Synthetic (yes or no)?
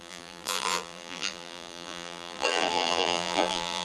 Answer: yes